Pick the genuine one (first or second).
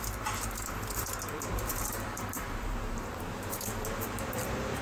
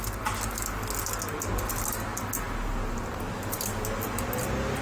second